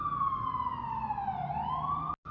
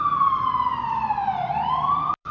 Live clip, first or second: first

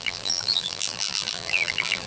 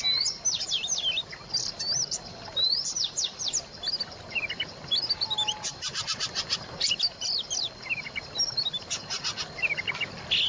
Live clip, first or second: second